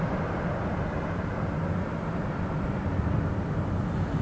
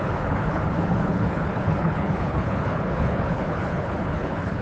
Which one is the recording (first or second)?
first